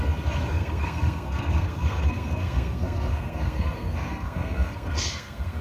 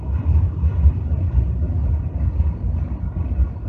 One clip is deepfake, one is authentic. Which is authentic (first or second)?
second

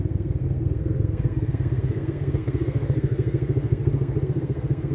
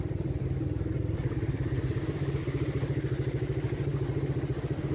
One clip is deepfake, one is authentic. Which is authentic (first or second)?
second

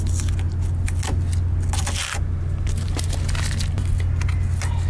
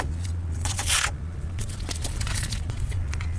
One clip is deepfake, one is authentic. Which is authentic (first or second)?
first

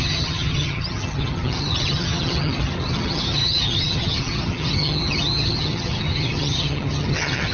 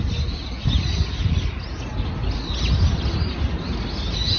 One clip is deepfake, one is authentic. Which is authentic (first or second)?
second